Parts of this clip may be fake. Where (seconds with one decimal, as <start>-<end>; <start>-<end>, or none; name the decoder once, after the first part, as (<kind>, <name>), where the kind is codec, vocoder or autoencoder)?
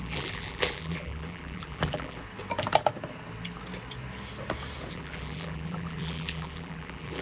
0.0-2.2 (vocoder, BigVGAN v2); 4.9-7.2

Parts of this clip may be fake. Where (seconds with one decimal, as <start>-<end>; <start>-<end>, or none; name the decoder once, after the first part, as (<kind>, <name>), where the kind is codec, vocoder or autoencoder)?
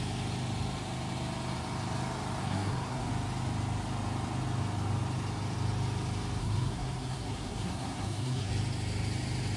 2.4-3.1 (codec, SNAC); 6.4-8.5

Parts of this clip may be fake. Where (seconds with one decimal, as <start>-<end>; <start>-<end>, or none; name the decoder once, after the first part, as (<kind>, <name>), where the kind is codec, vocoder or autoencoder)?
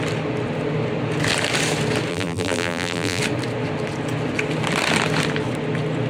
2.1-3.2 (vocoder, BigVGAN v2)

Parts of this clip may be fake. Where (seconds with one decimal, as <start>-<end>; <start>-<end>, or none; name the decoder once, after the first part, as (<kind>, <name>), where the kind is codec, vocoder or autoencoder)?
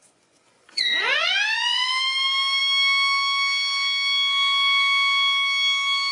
0.0-1.9 (vocoder, Vocos)